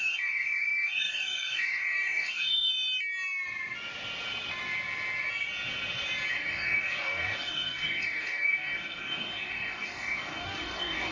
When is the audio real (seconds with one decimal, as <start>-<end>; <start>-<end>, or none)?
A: 2.7-6.3